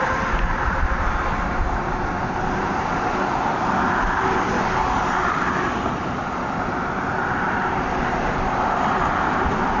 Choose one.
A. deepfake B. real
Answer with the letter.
B